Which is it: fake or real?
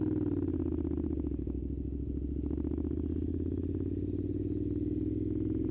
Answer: real